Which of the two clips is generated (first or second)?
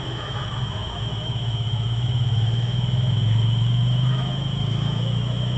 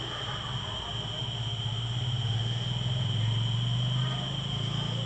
first